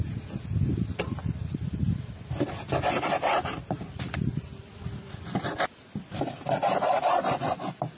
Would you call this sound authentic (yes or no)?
yes